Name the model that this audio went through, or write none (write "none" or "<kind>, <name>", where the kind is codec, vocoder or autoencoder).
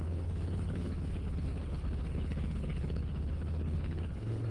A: codec, HILCodec